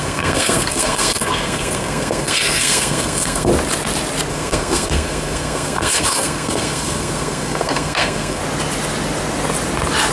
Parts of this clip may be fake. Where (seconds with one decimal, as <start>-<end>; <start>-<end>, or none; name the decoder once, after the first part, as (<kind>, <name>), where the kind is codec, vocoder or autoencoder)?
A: 0.0-3.5 (codec, SNAC); 4.3-8.4